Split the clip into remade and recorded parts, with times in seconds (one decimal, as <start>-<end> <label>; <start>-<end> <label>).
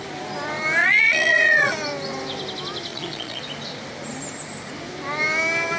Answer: 0.0-0.8 recorded; 0.8-1.7 remade; 1.7-2.9 recorded; 2.9-3.4 remade; 3.4-5.8 recorded